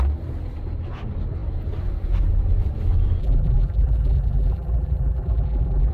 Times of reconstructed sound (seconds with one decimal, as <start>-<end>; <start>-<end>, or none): 3.2-5.9